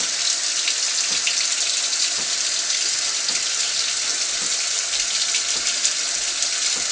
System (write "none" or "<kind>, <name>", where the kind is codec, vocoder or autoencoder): none